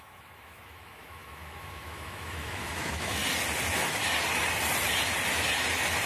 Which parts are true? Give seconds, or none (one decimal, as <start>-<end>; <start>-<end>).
3.2-6.1